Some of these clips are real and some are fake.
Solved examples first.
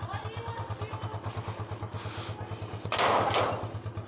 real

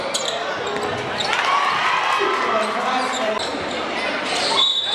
real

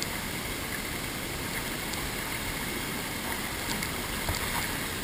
real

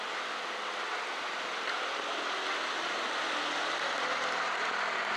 real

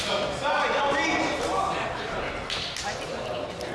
real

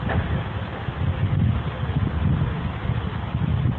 real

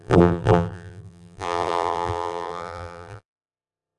fake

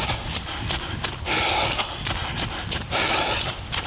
real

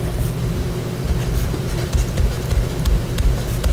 fake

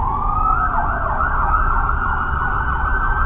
real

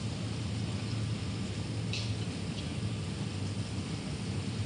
real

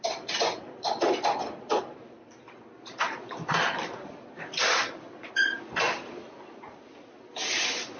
fake